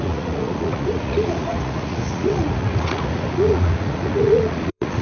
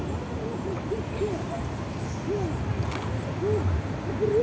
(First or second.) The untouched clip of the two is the second